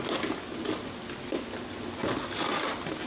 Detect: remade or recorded recorded